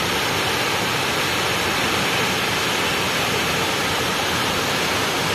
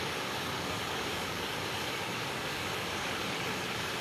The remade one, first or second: second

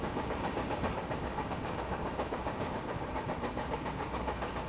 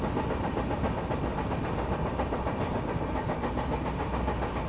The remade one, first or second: first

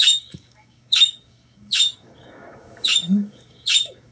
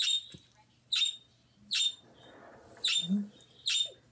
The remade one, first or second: first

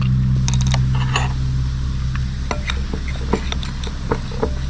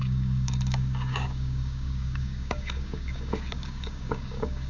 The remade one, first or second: second